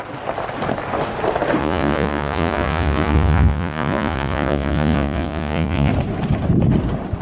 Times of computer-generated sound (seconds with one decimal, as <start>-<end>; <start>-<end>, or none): 1.6-5.9